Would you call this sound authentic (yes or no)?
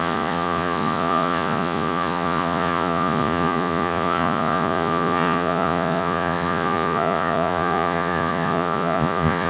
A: no